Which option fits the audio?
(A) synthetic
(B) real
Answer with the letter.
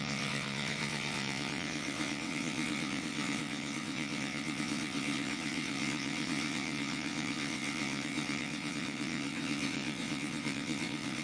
A